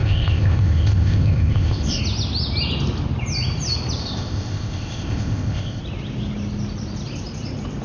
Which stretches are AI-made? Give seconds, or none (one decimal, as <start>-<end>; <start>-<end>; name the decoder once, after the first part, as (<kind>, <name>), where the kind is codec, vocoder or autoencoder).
0.0-2.0 (codec, ZipCodec); 4.0-5.8